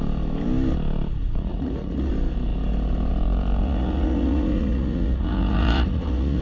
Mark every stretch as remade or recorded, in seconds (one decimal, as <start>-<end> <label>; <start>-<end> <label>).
0.0-1.2 recorded; 1.2-2.1 remade; 2.1-3.6 recorded; 3.6-6.4 remade

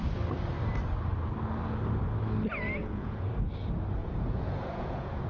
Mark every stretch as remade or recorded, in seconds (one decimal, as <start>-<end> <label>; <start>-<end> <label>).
0.0-2.8 recorded; 2.8-3.3 remade; 3.3-4.0 recorded; 4.0-5.3 remade

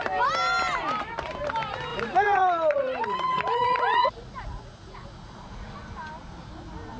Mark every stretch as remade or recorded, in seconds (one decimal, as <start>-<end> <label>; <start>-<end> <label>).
0.0-1.9 recorded; 1.9-5.7 remade; 5.7-7.0 recorded